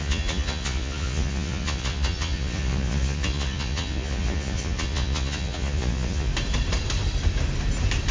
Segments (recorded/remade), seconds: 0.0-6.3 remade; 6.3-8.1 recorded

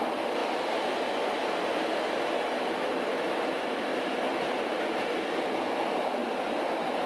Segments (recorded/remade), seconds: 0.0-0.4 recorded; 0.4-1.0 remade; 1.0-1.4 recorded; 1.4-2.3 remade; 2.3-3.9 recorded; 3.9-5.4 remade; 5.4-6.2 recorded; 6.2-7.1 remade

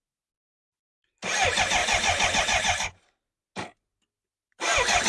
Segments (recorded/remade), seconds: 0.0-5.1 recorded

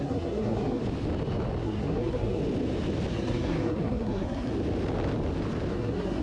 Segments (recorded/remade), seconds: 0.0-0.8 remade; 0.8-1.6 recorded; 1.6-2.4 remade; 2.4-3.1 recorded; 3.1-4.5 remade; 4.5-5.7 recorded; 5.7-6.2 remade

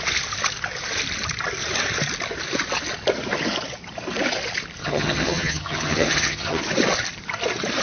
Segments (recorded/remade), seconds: 0.0-4.8 recorded; 4.8-6.6 remade; 6.6-7.8 recorded

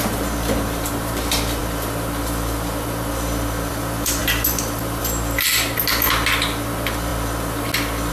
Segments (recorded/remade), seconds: 0.0-8.1 recorded